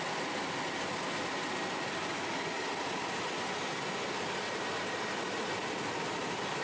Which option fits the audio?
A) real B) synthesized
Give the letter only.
A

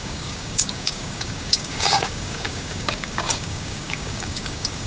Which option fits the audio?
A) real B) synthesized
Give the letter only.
B